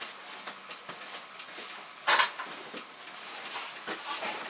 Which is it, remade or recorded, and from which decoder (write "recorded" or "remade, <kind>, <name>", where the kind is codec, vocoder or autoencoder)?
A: recorded